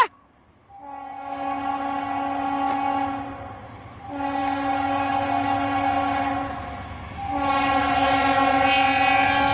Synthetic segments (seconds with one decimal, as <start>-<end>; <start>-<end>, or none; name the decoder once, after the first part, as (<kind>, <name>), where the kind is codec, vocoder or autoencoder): none